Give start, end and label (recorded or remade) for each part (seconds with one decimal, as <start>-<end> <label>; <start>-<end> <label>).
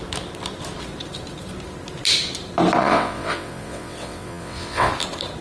0.0-2.8 recorded; 2.8-4.9 remade; 4.9-5.4 recorded